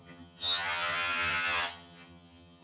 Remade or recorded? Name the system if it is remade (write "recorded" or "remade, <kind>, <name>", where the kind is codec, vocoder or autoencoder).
remade, vocoder, HiFi-GAN